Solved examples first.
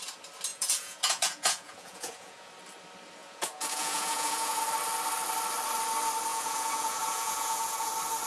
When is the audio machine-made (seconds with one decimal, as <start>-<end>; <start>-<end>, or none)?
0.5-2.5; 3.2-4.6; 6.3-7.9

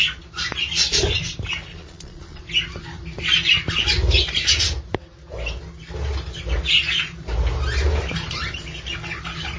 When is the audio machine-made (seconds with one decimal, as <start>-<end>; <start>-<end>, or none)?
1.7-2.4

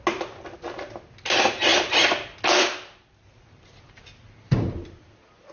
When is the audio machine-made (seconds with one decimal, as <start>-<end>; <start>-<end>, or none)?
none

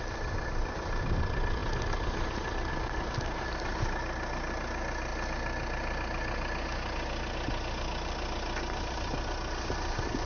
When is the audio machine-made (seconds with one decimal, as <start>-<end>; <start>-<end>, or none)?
none

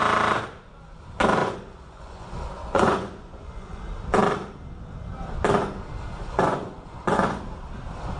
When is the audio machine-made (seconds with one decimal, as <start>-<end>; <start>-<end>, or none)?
1.4-3.8; 6.1-7.4

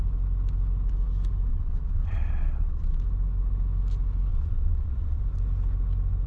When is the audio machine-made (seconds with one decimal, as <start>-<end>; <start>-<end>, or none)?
1.5-3.0; 4.3-5.2

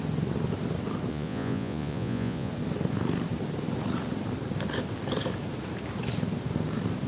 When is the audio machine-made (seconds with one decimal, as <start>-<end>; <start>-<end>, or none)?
1.1-2.5